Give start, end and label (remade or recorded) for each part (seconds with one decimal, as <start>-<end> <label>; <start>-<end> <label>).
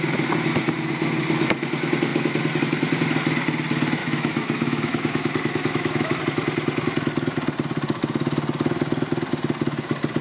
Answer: 0.0-4.0 recorded; 4.0-6.2 remade; 6.2-10.2 recorded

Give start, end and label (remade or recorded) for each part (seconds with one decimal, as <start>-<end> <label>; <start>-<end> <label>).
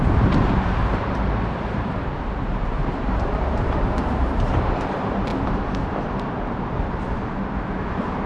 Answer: 0.0-5.3 remade; 5.3-7.8 recorded; 7.8-8.3 remade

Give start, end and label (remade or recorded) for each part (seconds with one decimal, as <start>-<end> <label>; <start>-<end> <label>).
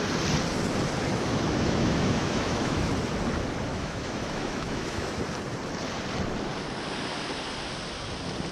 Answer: 0.0-1.1 recorded; 1.1-2.9 remade; 2.9-3.7 recorded; 3.7-5.2 remade; 5.2-8.5 recorded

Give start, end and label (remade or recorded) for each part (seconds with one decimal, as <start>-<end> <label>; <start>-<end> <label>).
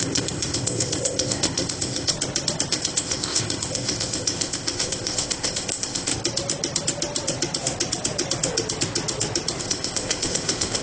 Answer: 0.0-2.1 remade; 2.1-2.7 recorded; 2.7-6.1 remade; 6.1-9.6 recorded; 9.6-10.8 remade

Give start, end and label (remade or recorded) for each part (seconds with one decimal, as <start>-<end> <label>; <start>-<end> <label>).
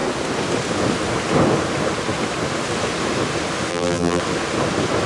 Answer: 0.0-3.7 recorded; 3.7-4.2 remade; 4.2-5.1 recorded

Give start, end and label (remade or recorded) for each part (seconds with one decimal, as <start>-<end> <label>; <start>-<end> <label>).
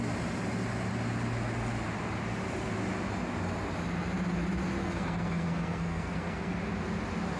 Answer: 0.0-4.8 recorded; 4.8-6.6 remade; 6.6-7.4 recorded